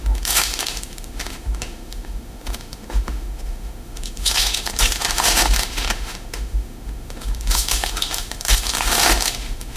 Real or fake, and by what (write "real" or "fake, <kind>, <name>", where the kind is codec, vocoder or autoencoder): fake, autoencoder, DAC-VAE